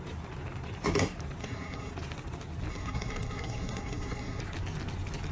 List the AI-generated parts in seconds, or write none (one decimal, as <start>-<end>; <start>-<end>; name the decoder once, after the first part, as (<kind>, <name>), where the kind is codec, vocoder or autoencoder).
1.4-1.9 (codec, SNAC); 2.7-4.4